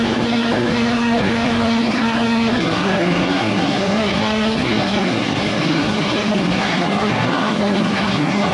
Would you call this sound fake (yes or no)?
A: yes